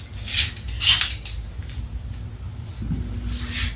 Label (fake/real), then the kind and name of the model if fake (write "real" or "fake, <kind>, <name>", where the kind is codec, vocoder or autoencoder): real